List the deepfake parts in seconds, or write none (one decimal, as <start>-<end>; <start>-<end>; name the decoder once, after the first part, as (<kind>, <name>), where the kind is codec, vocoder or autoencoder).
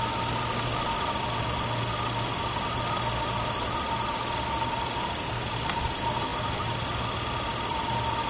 none